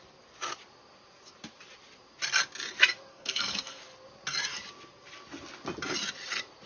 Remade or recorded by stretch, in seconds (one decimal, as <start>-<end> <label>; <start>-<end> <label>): 0.0-3.1 recorded; 3.1-3.8 remade; 3.8-6.7 recorded